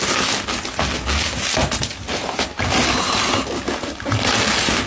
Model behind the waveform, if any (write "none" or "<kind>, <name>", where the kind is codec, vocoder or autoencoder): none